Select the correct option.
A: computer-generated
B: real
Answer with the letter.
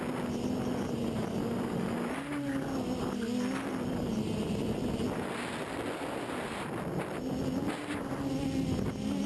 B